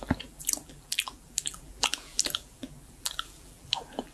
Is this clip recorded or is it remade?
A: remade